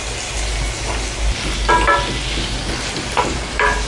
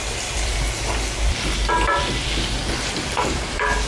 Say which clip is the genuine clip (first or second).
first